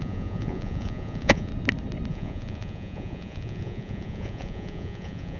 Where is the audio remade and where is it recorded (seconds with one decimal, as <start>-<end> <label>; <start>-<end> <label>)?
0.0-1.5 remade; 1.5-2.1 recorded; 2.1-5.4 remade